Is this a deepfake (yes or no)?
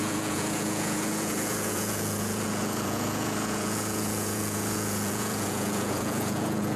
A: yes